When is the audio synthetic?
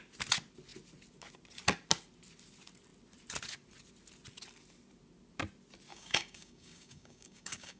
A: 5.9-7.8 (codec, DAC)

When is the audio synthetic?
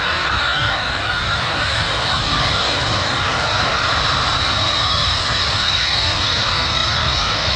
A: 0.0-3.9 (codec, DAC); 4.4-7.6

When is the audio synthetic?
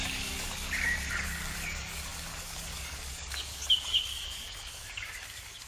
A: 0.0-5.7 (codec, DAC)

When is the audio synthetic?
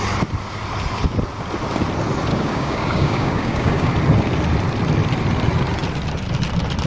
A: 2.3-3.9 (codec, DAC)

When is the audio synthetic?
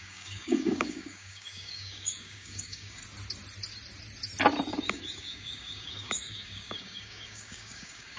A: 0.0-3.0 (codec, DAC); 4.7-8.2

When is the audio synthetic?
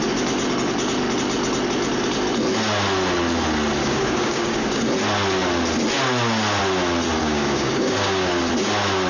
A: 3.8-4.8 (codec, DAC); 7.2-8.4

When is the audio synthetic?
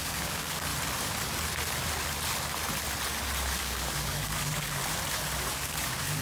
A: 0.0-0.7 (codec, DAC); 3.6-4.8; 5.5-6.2